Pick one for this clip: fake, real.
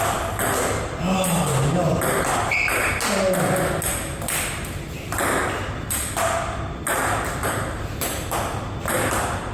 real